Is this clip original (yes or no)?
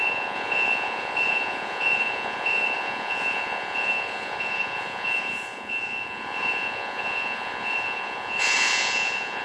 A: no